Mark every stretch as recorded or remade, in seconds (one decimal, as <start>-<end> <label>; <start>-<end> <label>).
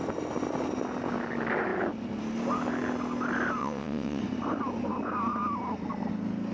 0.0-3.6 recorded; 3.6-4.2 remade; 4.2-6.5 recorded